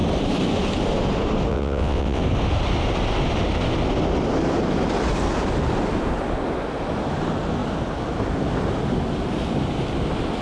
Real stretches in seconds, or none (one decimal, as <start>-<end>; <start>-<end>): 0.0-1.5; 2.2-10.4